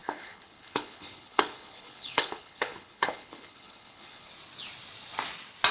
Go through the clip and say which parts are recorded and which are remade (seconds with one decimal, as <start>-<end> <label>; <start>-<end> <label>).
0.0-4.3 remade; 4.3-5.7 recorded